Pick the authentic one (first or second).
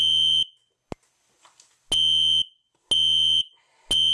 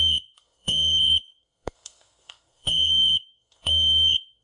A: first